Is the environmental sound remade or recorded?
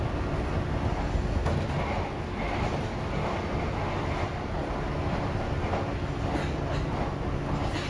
recorded